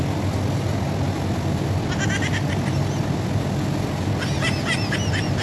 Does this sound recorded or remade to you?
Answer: recorded